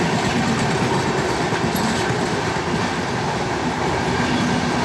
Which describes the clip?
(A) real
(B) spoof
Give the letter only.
A